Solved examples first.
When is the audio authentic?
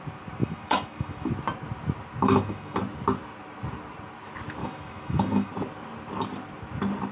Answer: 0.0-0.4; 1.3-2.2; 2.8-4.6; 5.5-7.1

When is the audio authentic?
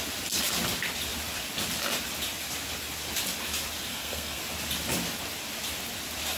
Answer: 0.0-3.9; 4.4-6.4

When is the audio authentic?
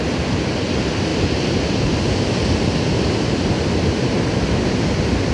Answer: 0.0-1.1; 3.3-5.3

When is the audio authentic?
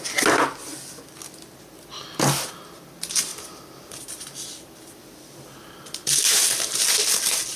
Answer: 0.0-3.3; 6.4-7.6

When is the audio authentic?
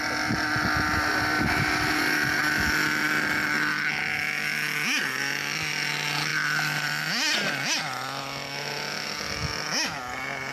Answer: 0.0-10.5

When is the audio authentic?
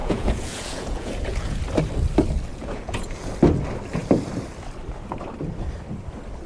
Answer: 1.6-2.5; 3.3-6.5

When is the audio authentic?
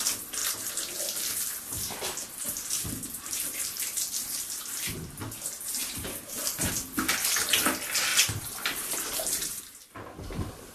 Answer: 0.0-5.8; 6.7-8.1; 9.6-10.7